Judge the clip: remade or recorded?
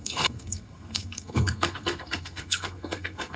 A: remade